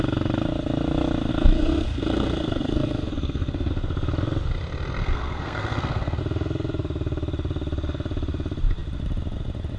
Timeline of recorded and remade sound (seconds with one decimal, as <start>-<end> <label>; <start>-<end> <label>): 0.0-1.3 recorded; 1.3-3.7 remade; 3.7-5.0 recorded; 5.0-6.2 remade; 6.2-9.8 recorded